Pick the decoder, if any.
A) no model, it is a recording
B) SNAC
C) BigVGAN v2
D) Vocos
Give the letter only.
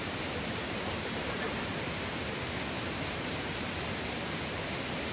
C